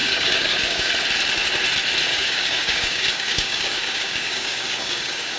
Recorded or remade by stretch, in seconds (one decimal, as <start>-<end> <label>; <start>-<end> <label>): 0.0-0.9 remade; 0.9-2.1 recorded; 2.1-5.4 remade